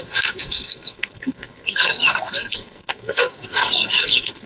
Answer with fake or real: fake